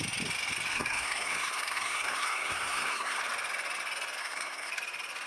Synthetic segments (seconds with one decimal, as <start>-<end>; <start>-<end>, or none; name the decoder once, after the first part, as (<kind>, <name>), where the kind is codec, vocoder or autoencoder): 0.7-3.2 (codec, SNAC); 4.2-4.7